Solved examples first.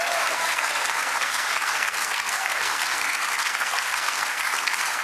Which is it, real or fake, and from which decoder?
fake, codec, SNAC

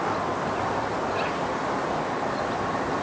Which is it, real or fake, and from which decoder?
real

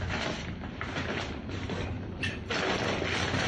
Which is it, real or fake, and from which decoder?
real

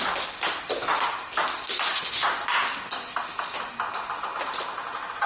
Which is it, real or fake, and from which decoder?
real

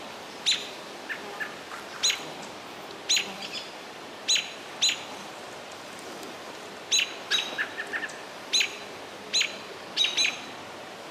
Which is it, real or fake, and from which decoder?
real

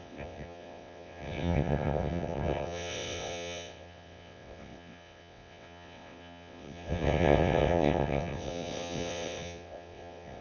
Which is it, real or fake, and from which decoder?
fake, vocoder, WaveNeXt